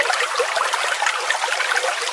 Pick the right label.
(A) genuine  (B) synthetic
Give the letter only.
A